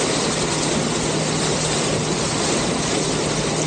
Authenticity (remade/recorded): recorded